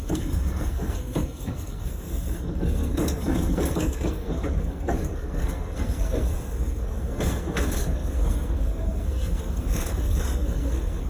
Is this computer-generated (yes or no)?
yes